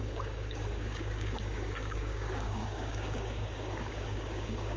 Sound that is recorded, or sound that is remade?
remade